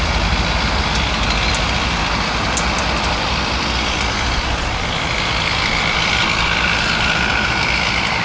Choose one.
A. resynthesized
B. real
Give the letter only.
B